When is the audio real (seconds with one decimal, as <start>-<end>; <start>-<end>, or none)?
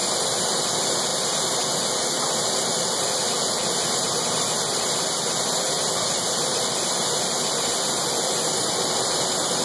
0.0-9.6